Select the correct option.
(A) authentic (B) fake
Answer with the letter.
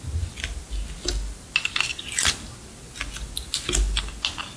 A